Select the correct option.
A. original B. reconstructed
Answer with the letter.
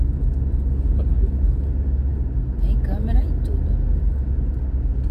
A